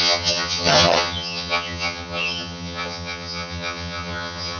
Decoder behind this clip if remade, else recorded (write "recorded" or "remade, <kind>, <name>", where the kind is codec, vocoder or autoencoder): remade, vocoder, HiFi-GAN